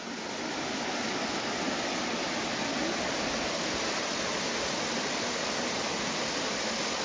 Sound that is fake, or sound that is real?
real